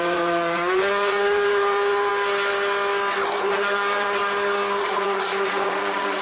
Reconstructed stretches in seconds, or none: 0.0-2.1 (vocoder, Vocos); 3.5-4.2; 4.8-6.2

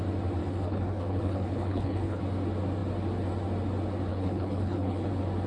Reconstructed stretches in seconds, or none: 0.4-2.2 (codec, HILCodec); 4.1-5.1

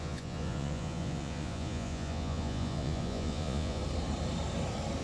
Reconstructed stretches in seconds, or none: 0.0-3.8 (vocoder, Vocos)

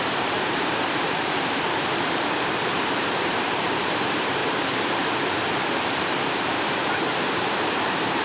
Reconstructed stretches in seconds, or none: 0.0-4.4 (vocoder, BigVGAN v2); 6.5-8.2

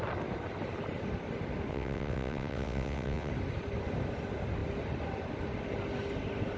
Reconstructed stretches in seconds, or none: 1.7-3.3 (vocoder, WaveNeXt)

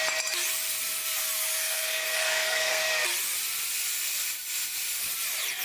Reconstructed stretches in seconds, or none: 1.6-2.8 (codec, SNAC)